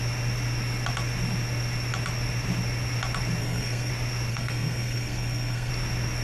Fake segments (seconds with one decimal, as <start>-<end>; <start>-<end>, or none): 3.4-3.9; 4.3-5.7